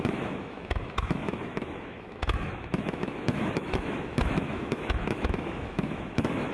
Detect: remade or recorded remade